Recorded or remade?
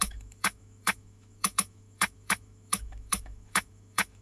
remade